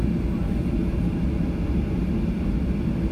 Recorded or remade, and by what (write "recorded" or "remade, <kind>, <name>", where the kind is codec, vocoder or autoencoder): recorded